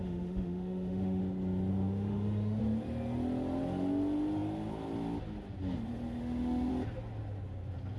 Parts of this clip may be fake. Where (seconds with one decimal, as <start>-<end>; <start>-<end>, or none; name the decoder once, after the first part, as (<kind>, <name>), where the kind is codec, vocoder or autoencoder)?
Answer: 0.0-1.2 (autoencoder, DAC-VAE); 1.7-2.6; 6.2-6.7

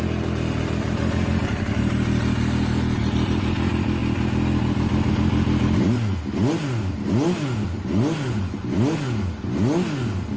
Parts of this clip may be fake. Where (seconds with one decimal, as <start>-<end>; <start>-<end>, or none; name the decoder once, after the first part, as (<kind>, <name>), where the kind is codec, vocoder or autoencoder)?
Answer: none

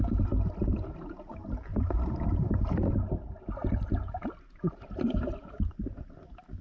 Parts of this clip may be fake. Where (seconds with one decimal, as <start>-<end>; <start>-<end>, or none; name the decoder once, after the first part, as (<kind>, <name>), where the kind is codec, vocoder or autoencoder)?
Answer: 0.6-1.1 (vocoder, BigVGAN v2); 1.7-5.7

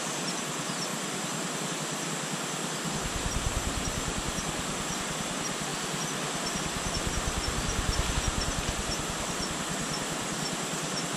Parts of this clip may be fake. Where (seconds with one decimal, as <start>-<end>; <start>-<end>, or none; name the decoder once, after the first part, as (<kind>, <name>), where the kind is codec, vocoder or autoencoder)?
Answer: 0.0-4.7 (vocoder, BigVGAN v2); 5.2-5.7; 8.1-11.2

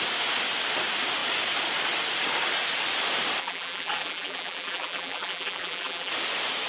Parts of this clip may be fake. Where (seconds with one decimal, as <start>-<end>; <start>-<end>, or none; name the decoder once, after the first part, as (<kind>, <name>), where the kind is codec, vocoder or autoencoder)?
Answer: 3.4-6.1 (vocoder, BigVGAN v2)

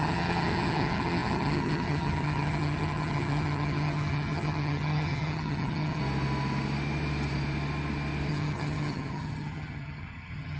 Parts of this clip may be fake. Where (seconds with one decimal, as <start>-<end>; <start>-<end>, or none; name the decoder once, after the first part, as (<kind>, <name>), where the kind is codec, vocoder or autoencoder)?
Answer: 0.0-6.0 (vocoder, HiFi-GAN); 8.3-10.6